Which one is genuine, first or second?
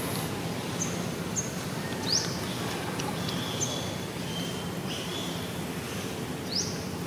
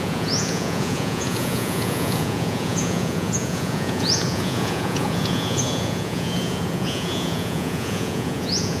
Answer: first